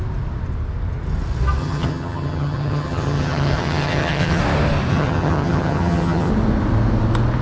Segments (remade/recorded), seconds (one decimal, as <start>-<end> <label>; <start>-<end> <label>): 0.0-1.6 recorded; 1.6-4.4 remade; 4.4-4.9 recorded; 4.9-6.3 remade; 6.3-7.4 recorded